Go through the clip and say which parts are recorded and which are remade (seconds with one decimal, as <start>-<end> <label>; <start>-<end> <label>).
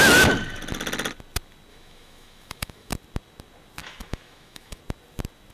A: 0.0-1.7 recorded; 1.7-2.9 remade; 2.9-3.8 recorded; 3.8-4.8 remade; 4.8-5.5 recorded